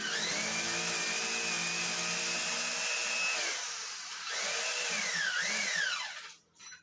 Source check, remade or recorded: recorded